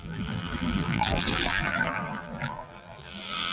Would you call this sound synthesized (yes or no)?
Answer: yes